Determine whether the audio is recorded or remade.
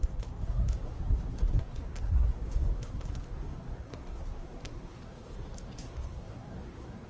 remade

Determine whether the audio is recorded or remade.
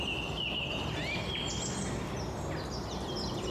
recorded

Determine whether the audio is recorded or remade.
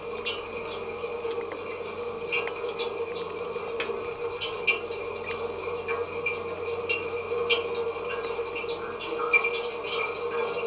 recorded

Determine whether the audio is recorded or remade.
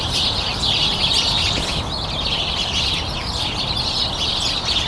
recorded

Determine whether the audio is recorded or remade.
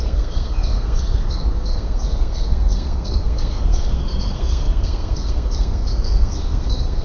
remade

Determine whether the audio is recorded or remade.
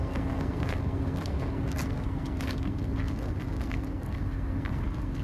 remade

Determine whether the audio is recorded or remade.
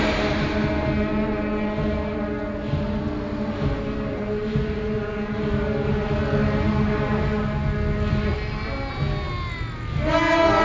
recorded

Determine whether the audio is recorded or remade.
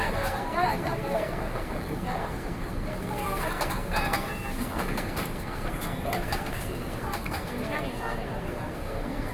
remade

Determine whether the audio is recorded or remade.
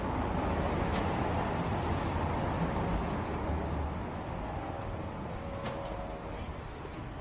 recorded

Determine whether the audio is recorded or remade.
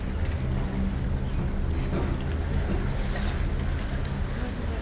recorded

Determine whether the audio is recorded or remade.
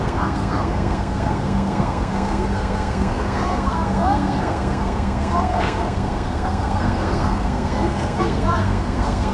remade